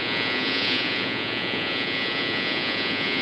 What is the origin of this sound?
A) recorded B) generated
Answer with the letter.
B